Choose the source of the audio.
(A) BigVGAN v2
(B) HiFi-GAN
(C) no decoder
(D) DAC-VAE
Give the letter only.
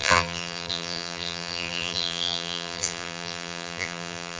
A